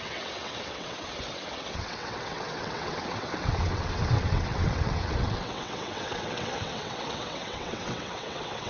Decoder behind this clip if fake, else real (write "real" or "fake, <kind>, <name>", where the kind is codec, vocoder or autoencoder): fake, vocoder, WaveNeXt